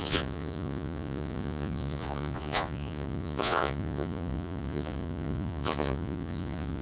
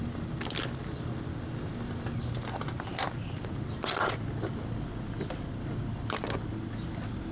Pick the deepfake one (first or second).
first